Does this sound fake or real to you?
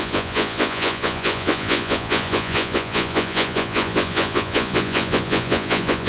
fake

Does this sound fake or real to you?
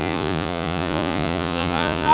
fake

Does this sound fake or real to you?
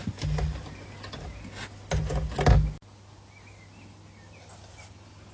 real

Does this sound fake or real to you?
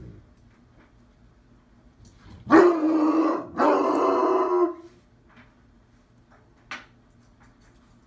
real